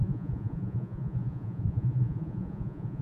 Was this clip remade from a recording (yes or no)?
yes